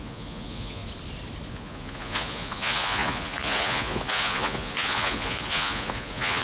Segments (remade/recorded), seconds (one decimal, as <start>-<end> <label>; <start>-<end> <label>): 0.0-0.8 remade; 0.8-1.5 recorded; 1.5-6.4 remade